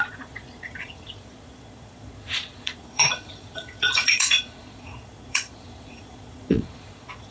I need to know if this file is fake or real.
fake